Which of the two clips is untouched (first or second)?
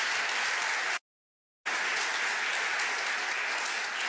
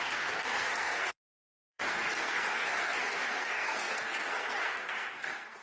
first